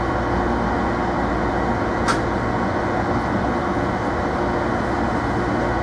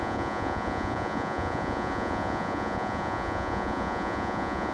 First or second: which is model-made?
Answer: second